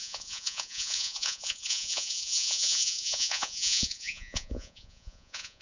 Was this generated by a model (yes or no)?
yes